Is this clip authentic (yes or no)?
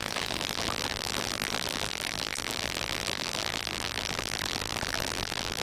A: no